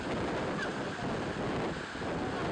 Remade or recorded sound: recorded